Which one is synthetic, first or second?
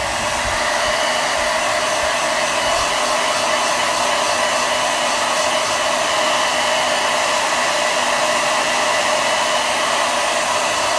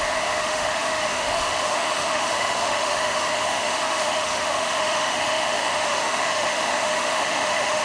second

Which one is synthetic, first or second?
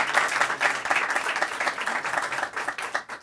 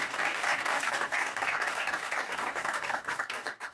second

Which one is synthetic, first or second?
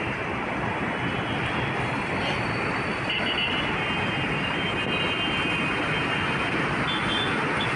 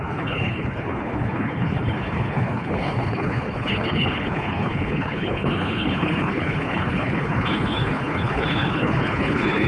second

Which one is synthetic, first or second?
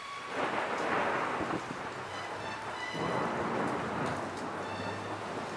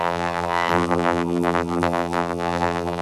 second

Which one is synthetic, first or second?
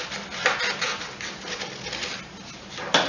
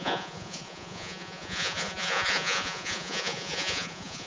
second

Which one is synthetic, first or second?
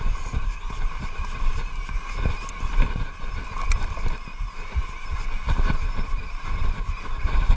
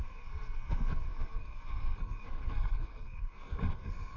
second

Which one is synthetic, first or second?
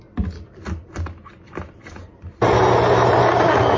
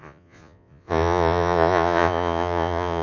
second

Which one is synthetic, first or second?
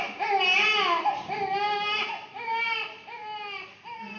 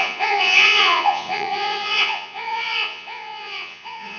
second